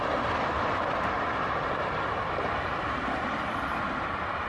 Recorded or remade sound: remade